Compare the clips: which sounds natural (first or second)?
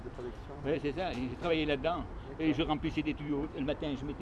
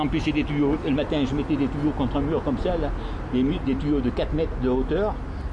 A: second